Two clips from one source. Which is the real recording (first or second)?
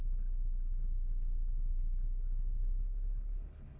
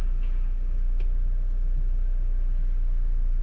second